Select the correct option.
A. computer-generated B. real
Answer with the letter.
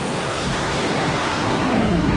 A